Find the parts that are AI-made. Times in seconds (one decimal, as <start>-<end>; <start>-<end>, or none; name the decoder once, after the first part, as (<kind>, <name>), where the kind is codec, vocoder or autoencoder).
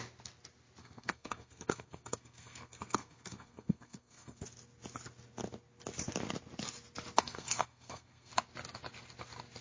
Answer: 0.8-4.4 (codec, SNAC); 7.2-8.3